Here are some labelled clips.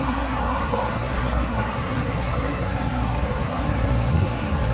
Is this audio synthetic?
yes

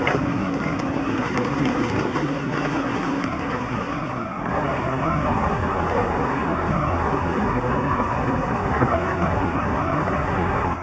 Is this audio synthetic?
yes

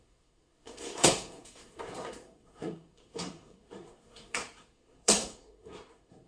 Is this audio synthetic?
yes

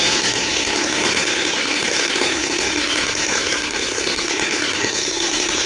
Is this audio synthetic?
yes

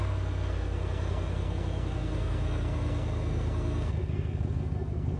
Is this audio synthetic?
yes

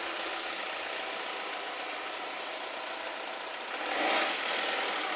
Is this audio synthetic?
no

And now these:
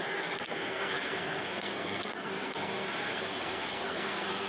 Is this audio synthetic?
yes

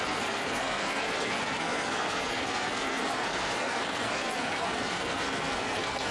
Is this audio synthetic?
yes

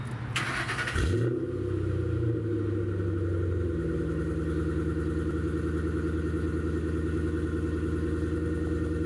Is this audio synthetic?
no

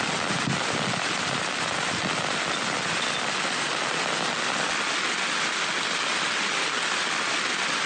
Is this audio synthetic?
no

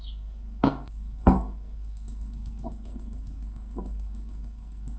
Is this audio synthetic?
yes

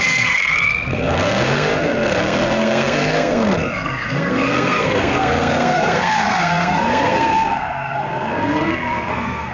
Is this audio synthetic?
yes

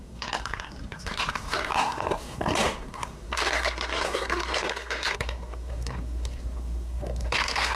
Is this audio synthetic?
yes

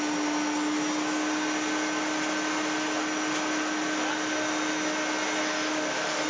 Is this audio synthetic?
no